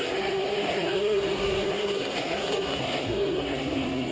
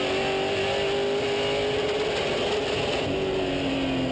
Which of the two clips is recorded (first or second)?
second